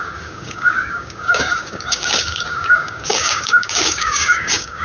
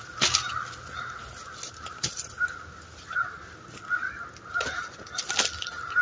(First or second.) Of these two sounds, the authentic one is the second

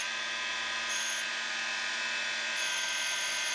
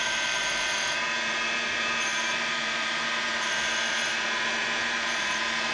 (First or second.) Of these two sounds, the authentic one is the first